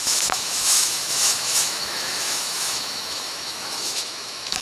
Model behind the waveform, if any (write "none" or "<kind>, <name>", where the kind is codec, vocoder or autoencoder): autoencoder, DAC-VAE